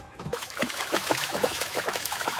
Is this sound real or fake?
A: fake